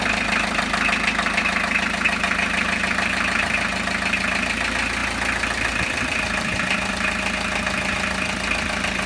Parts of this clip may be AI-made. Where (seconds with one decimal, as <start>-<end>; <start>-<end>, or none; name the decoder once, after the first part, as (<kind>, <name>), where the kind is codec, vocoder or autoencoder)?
none